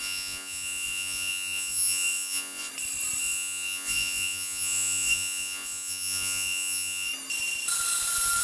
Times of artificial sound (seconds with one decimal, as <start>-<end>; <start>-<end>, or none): 0.0-2.7; 3.2-7.1